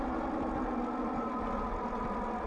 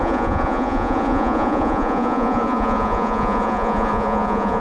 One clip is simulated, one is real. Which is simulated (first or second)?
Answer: second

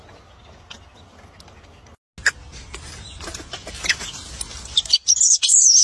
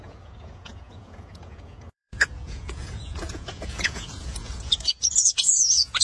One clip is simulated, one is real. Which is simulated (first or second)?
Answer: second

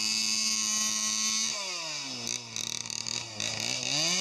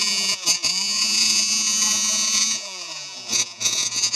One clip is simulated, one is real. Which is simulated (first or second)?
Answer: second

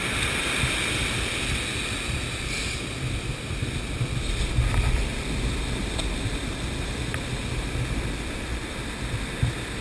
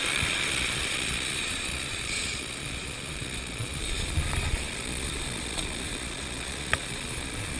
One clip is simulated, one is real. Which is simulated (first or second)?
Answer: second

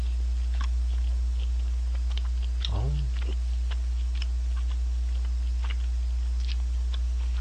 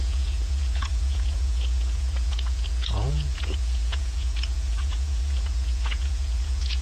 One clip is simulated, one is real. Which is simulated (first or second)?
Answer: second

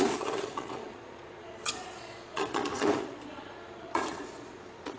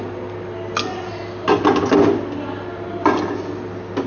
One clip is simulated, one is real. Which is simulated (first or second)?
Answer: first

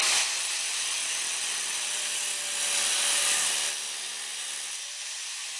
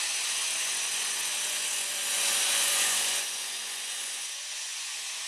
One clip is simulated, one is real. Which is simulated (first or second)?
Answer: second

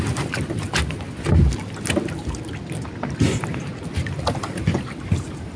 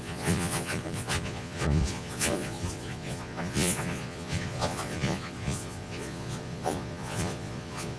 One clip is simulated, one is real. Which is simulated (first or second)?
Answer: second